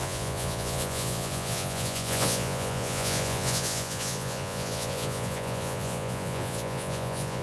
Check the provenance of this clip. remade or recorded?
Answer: remade